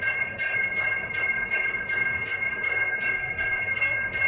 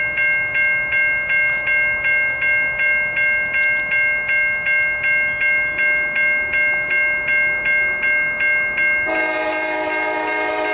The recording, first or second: second